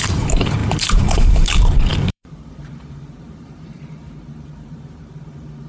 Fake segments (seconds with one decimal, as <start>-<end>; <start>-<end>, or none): 0.0-5.7